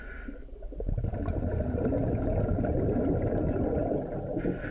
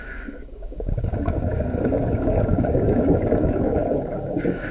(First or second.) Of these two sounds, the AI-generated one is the second